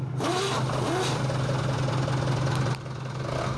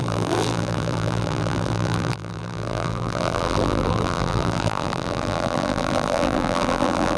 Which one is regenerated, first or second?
second